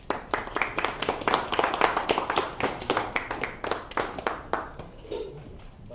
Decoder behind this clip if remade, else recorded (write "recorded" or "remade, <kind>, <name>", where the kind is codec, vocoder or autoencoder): recorded